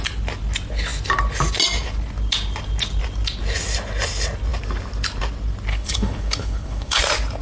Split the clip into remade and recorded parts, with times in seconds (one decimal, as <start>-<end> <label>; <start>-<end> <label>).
0.0-5.7 recorded; 5.7-7.0 remade; 7.0-7.4 recorded